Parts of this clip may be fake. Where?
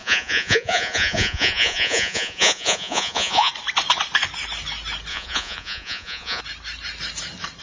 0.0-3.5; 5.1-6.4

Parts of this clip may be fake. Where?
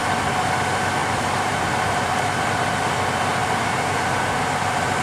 1.0-2.9; 3.4-4.2